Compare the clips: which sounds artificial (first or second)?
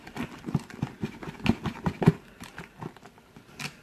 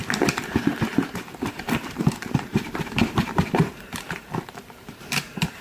second